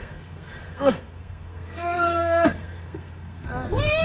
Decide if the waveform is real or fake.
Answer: fake